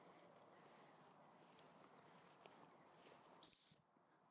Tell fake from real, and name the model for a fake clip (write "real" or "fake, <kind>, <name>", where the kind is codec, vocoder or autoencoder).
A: fake, vocoder, BigVGAN v2